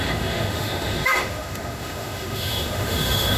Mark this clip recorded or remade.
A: remade